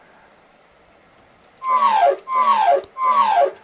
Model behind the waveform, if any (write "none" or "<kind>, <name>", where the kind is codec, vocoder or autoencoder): none